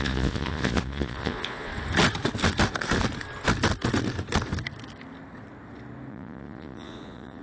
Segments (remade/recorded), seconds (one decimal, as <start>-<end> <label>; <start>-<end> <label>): 0.0-1.7 remade; 1.7-6.1 recorded; 6.1-7.4 remade